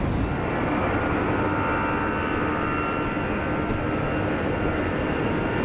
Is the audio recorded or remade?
recorded